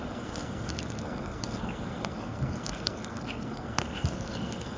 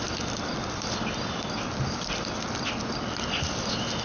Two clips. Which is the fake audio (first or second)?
first